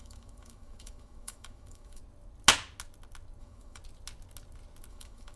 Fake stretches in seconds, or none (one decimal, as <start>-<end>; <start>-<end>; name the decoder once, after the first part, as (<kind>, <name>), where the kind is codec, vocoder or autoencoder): 0.0-2.0 (autoencoder, DAC-VAE); 3.4-3.8; 4.9-5.4